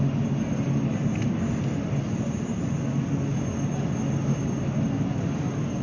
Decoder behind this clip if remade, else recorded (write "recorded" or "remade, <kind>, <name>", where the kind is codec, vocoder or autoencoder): recorded